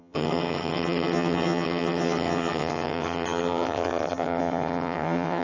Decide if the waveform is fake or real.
fake